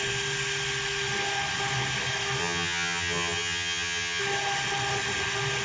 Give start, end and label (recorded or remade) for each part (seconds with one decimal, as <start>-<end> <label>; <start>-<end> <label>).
0.0-2.4 recorded; 2.4-4.2 remade; 4.2-5.6 recorded